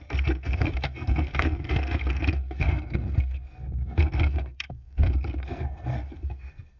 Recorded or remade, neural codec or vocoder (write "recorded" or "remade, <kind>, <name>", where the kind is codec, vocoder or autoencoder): remade, codec, SNAC